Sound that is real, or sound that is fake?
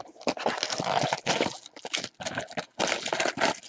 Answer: real